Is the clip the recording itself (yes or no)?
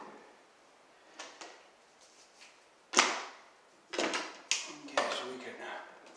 yes